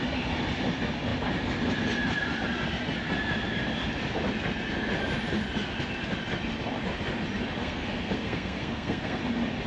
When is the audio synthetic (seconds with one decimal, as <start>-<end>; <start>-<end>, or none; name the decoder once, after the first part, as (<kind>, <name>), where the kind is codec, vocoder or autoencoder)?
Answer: 7.6-9.2 (codec, SNAC)